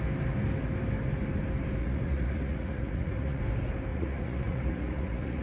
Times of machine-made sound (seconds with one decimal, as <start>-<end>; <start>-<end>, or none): 1.8-3.4; 3.9-5.4